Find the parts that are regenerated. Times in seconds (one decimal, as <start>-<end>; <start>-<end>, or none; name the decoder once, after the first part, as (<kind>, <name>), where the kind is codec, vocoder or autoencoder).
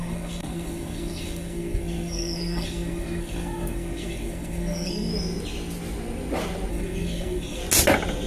0.0-5.1 (codec, SNAC); 6.7-7.6